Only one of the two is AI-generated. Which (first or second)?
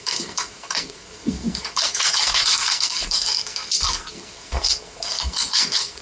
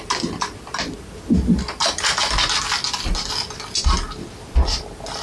first